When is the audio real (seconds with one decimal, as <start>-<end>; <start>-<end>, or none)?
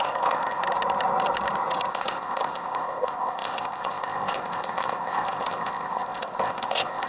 0.6-1.9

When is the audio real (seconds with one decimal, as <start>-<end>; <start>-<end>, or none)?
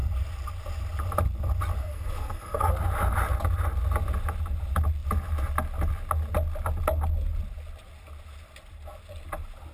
0.0-1.8; 2.7-9.7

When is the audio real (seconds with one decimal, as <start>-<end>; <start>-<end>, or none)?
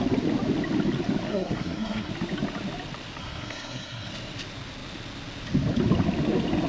0.0-1.3; 2.1-3.2; 4.1-6.7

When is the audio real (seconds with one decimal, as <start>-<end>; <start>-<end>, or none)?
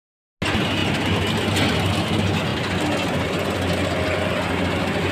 0.0-5.1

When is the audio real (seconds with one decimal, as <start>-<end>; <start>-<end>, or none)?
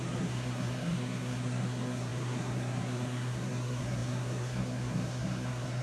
none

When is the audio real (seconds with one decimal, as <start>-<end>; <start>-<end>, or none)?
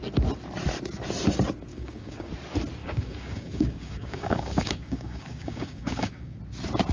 0.0-1.7; 2.3-2.8; 6.4-6.9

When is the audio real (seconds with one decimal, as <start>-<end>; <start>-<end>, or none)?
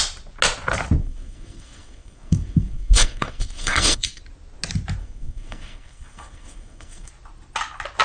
0.0-1.0; 4.2-5.0; 7.1-8.0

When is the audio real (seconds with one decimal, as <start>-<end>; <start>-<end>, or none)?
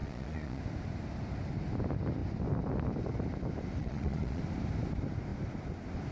0.6-3.8; 4.4-6.1